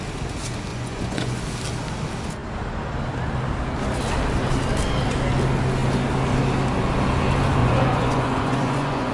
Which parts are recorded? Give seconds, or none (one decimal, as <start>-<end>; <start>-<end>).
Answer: 0.0-0.7; 1.4-7.6